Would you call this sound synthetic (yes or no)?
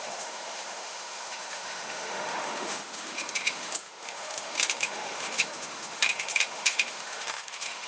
yes